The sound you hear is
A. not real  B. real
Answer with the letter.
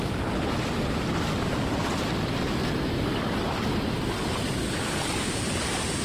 B